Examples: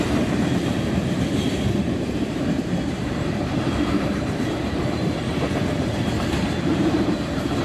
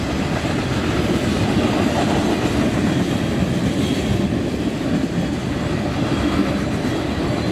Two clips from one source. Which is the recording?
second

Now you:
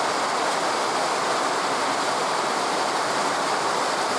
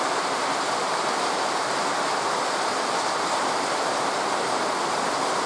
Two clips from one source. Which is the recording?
second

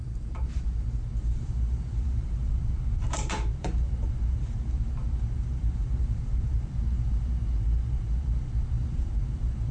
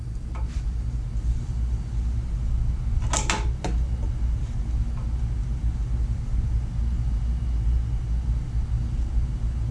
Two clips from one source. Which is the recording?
second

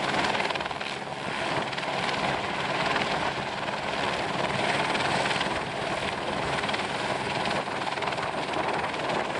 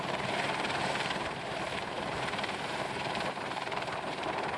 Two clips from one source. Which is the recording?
first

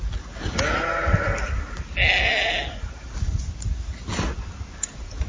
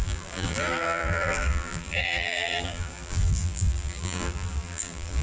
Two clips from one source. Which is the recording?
first